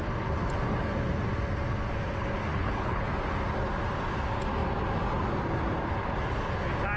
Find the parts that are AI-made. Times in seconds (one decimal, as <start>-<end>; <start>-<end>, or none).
2.5-3.1